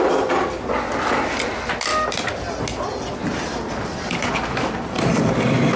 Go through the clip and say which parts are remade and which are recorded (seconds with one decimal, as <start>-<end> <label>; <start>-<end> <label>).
0.0-5.8 recorded